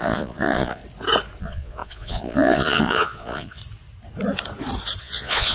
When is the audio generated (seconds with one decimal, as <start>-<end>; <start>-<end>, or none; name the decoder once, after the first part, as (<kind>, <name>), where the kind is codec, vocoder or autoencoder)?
0.0-0.8 (vocoder, Vocos); 1.4-3.6; 5.0-5.5